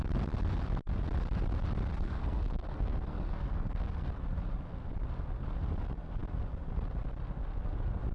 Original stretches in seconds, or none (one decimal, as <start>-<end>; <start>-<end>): 0.0-1.9; 4.2-8.1